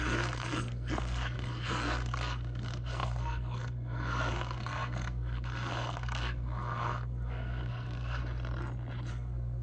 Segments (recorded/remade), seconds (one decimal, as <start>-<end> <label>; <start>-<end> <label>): 0.0-8.2 remade; 8.2-9.1 recorded; 9.1-9.6 remade